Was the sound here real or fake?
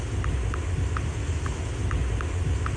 real